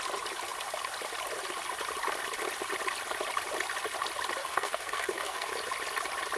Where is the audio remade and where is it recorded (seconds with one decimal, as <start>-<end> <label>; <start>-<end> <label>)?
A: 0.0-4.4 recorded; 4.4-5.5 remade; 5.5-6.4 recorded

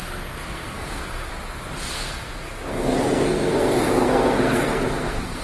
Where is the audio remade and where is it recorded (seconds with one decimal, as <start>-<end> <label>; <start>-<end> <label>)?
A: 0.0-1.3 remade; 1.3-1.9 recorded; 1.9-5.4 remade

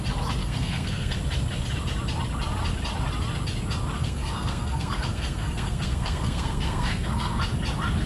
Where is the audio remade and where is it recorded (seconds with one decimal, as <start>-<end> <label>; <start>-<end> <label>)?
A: 0.0-0.4 recorded; 0.4-1.2 remade; 1.2-4.0 recorded; 4.0-7.4 remade; 7.4-8.1 recorded

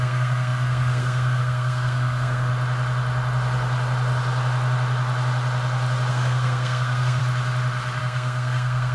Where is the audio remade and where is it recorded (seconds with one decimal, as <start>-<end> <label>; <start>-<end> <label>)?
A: 0.0-2.5 remade; 2.5-6.1 recorded; 6.1-7.2 remade; 7.2-8.0 recorded; 8.0-8.9 remade

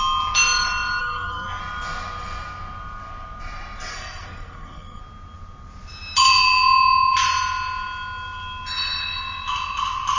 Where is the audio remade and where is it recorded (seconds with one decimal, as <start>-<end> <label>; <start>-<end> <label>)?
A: 0.0-1.0 recorded; 1.0-1.6 remade; 1.6-3.9 recorded; 3.9-5.0 remade; 5.0-10.2 recorded

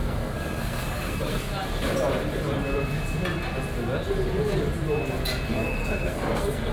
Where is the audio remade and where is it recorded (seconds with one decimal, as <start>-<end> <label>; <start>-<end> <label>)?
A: 0.0-1.5 remade; 1.5-5.5 recorded; 5.5-6.7 remade

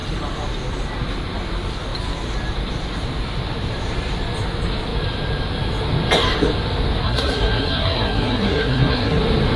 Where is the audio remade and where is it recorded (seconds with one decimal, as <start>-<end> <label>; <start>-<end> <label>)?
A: 0.0-7.0 recorded; 7.0-9.2 remade; 9.2-9.6 recorded